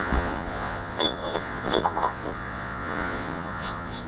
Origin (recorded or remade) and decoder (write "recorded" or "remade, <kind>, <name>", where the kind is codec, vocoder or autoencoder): remade, vocoder, Vocos